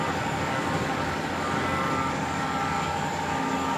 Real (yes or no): no